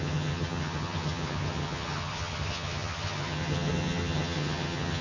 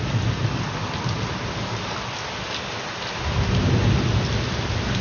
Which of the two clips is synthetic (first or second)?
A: first